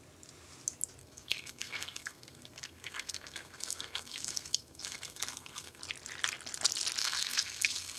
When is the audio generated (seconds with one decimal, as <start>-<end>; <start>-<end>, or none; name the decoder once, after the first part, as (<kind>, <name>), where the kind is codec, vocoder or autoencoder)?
1.0-5.8 (codec, SNAC); 7.0-8.0